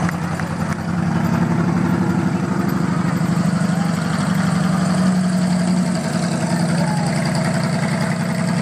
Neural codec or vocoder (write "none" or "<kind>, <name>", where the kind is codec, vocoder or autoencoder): none